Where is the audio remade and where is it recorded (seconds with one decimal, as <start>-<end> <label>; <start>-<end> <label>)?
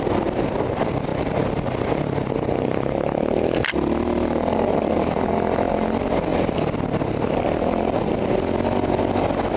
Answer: 0.0-9.6 recorded